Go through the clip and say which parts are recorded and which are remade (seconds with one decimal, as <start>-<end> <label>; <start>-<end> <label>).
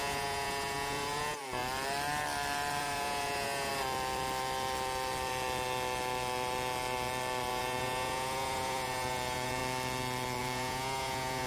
0.0-1.6 remade; 1.6-2.8 recorded; 2.8-3.7 remade; 3.7-7.5 recorded; 7.5-9.6 remade; 9.6-10.4 recorded; 10.4-11.5 remade